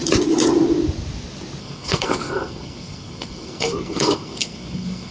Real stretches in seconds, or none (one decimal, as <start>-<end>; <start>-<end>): 0.0-1.6